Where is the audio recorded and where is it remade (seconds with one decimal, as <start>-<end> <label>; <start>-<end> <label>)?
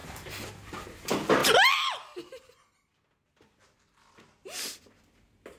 0.0-0.5 remade; 0.5-5.6 recorded